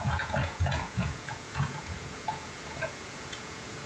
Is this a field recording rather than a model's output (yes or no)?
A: no